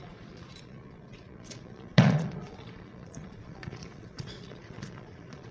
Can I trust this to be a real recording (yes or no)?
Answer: no